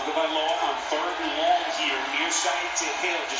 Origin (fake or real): real